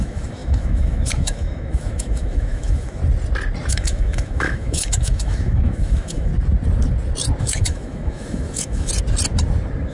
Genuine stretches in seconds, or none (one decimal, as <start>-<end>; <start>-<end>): 3.0-3.7; 6.3-7.4; 8.9-9.9